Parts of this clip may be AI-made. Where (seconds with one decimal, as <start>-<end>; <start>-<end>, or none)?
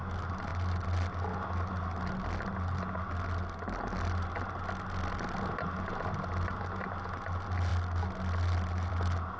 none